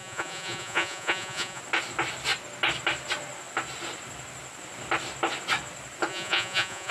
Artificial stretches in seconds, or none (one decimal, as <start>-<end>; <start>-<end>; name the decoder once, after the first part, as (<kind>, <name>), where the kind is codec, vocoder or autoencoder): 0.0-1.6 (vocoder, Vocos); 6.1-6.9